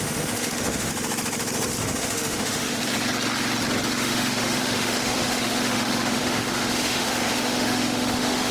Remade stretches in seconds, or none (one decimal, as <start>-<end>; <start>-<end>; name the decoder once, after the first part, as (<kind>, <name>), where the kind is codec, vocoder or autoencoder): 0.0-0.9 (autoencoder, DAC-VAE); 1.8-2.8; 3.9-8.5